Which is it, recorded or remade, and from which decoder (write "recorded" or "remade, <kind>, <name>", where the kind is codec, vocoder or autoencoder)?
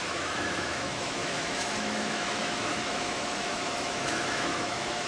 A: remade, autoencoder, DAC-VAE